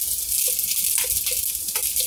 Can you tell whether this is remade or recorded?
recorded